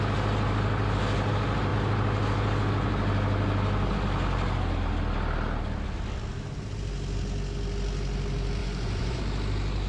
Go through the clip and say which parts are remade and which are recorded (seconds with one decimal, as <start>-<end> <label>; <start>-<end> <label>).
0.0-8.6 recorded; 8.6-9.2 remade; 9.2-9.9 recorded